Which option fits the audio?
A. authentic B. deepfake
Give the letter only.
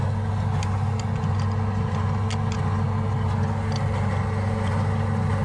A